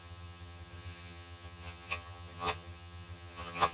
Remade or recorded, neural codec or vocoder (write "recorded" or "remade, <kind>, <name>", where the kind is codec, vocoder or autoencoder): remade, vocoder, HiFi-GAN